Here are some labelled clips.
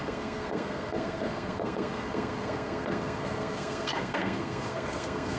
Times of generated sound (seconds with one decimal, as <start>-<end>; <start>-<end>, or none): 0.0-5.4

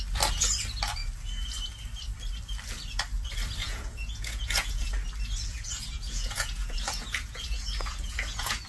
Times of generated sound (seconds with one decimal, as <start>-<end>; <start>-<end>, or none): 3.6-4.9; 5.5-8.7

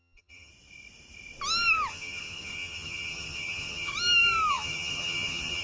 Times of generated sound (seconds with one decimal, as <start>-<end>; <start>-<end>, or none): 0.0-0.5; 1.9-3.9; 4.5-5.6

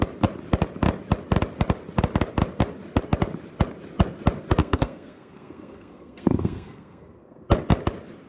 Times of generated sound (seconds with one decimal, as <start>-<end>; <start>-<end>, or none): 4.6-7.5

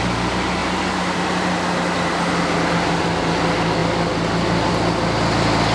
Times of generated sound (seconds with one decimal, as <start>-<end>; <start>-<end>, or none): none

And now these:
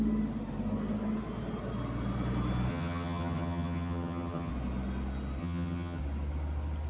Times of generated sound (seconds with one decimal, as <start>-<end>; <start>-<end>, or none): 2.7-4.5; 5.4-6.0

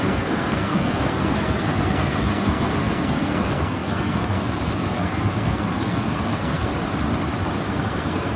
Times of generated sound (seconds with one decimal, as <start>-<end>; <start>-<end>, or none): 0.0-6.7; 7.5-8.4

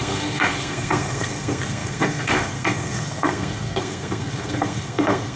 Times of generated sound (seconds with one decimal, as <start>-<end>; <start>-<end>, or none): 0.0-5.4